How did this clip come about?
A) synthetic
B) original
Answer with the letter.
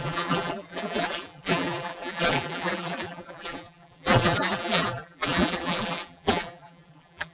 A